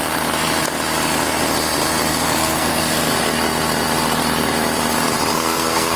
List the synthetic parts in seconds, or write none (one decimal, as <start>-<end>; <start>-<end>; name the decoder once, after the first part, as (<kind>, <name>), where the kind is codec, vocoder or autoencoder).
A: 2.1-2.8 (codec, SNAC); 5.3-6.0